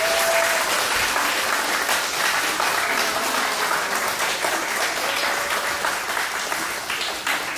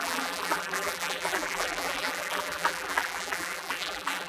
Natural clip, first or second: first